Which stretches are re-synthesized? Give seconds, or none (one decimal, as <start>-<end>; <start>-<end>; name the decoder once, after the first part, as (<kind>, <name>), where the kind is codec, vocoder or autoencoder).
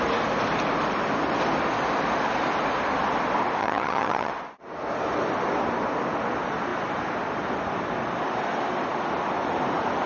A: 3.6-4.3 (vocoder, HiFi-GAN)